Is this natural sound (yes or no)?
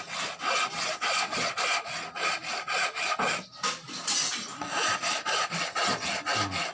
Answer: yes